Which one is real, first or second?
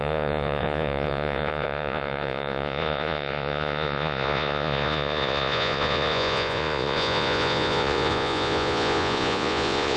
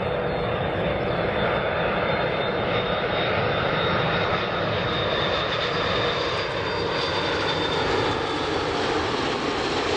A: second